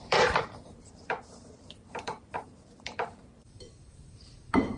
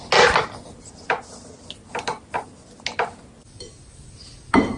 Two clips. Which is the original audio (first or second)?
second